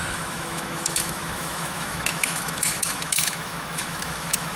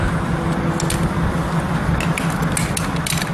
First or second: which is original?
second